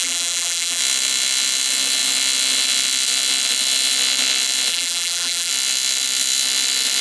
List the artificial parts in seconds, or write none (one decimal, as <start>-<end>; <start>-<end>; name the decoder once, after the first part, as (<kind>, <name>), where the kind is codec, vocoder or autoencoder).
0.0-0.8 (vocoder, BigVGAN v2); 4.7-5.5